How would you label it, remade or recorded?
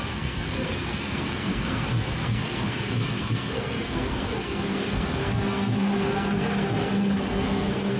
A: remade